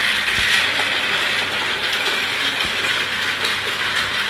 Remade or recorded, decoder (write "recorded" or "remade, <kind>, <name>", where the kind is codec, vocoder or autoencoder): recorded